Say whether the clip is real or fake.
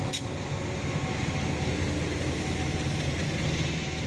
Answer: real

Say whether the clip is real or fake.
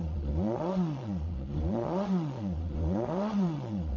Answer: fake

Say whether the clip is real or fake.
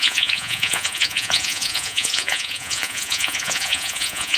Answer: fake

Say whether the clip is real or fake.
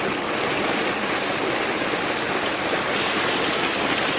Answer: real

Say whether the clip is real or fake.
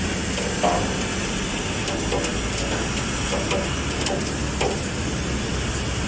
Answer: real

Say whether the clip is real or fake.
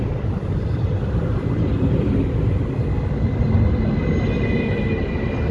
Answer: real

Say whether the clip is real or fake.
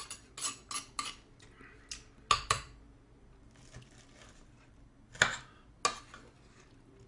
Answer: real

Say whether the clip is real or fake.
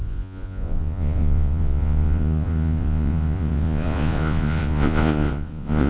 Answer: fake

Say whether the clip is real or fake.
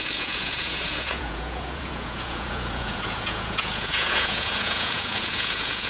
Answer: fake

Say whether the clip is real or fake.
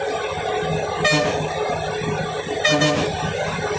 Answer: real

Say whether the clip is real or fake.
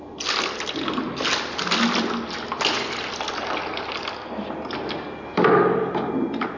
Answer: real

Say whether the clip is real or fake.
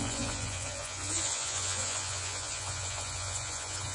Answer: fake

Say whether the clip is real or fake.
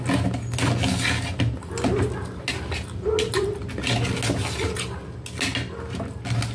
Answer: real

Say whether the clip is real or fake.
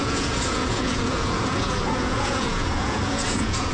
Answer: fake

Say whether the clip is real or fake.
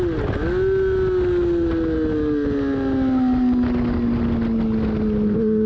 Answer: real